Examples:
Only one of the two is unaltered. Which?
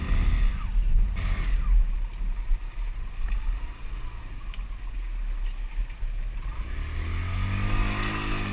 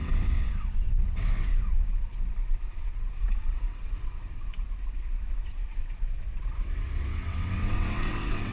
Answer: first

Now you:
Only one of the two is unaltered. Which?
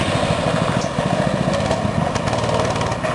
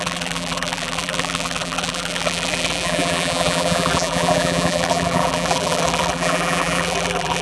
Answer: first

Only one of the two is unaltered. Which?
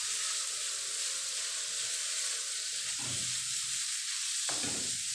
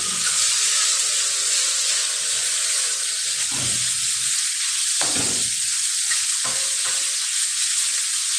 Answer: first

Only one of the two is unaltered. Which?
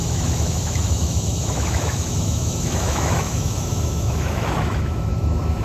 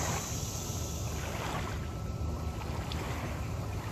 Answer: second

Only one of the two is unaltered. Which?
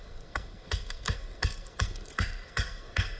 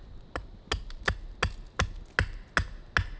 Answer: second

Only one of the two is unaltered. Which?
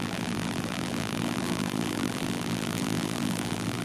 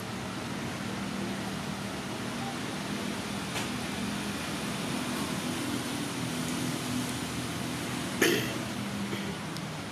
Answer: second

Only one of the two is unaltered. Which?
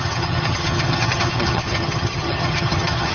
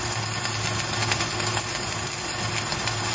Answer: second